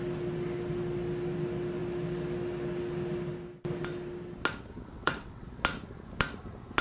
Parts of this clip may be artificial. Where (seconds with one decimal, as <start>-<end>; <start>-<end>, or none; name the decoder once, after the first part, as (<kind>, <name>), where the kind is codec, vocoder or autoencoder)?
4.9-5.5 (vocoder, WaveNeXt)